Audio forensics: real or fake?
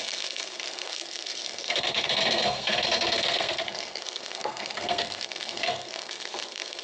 fake